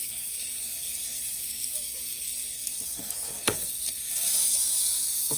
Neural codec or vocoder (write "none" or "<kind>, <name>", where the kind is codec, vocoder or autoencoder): codec, SNAC